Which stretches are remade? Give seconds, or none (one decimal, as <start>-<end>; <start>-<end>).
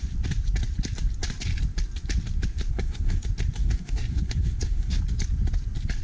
2.7-3.2; 3.6-5.0